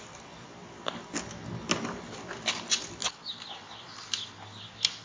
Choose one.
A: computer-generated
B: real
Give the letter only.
B